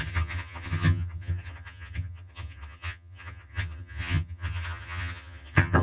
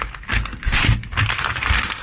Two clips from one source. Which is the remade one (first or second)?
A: first